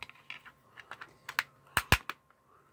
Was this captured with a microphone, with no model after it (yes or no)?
yes